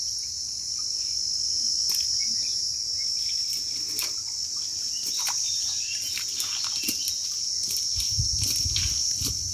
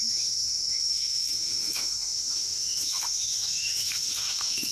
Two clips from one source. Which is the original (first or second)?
first